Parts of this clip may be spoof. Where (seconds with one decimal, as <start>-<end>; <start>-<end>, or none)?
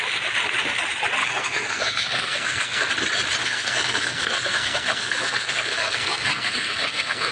1.2-2.9; 3.4-7.3